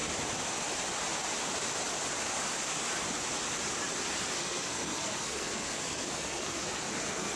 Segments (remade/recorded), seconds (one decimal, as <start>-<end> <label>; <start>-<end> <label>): 0.0-4.4 recorded; 4.4-7.4 remade